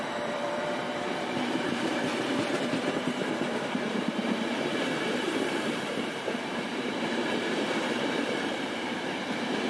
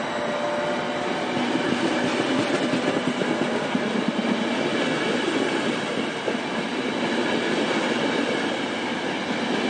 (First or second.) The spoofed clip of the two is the first